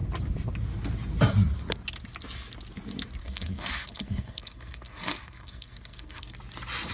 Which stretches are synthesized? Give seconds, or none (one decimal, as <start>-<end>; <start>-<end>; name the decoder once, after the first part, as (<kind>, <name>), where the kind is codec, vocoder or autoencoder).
3.2-6.3 (codec, SNAC)